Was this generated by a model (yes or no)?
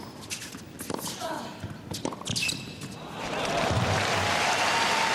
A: no